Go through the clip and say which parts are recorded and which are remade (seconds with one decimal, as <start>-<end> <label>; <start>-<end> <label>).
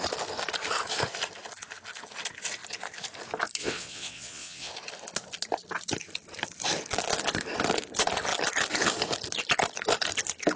0.0-3.6 recorded; 3.6-4.7 remade; 4.7-10.6 recorded